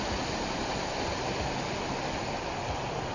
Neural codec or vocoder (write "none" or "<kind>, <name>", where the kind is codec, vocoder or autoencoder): none